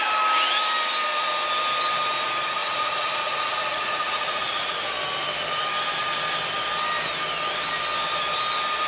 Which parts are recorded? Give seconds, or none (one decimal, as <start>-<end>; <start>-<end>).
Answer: 0.0-2.6; 4.7-8.9